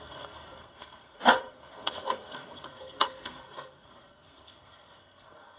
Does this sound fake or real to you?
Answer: fake